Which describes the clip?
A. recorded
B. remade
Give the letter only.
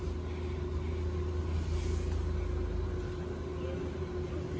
A